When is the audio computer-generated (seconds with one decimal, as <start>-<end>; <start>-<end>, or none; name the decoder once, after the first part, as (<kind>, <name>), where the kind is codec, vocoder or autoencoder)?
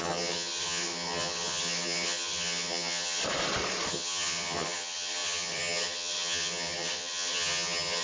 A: 0.0-3.2 (vocoder, HiFi-GAN); 3.9-8.0